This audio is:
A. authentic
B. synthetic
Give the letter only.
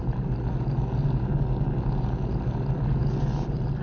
A